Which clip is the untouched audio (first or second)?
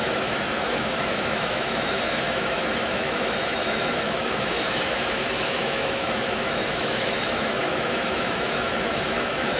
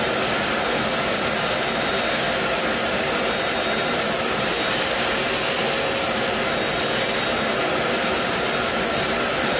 second